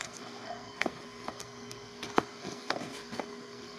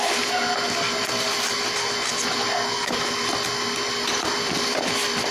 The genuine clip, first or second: second